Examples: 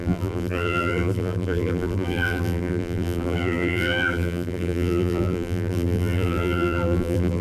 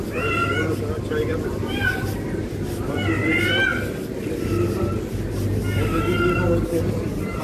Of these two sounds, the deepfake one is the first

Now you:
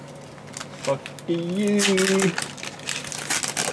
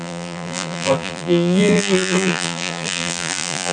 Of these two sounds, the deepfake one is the second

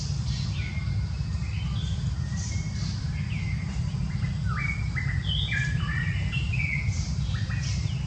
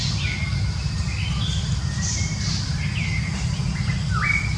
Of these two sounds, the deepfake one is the second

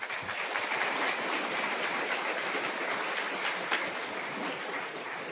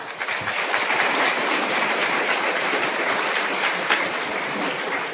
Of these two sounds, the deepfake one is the second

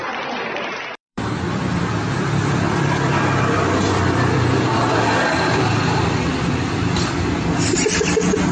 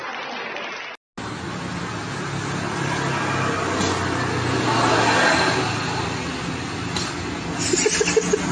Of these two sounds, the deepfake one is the first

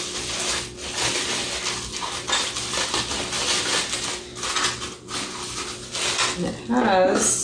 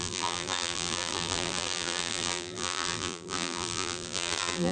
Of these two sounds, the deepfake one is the second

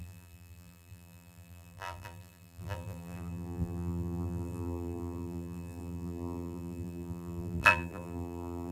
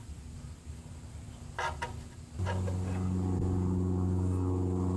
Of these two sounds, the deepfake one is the first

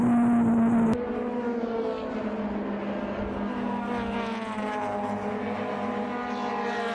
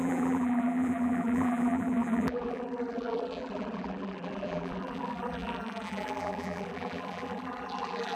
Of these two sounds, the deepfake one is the second